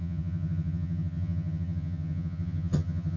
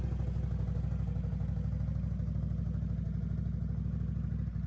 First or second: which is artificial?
first